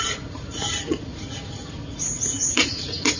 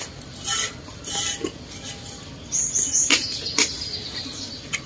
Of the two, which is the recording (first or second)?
second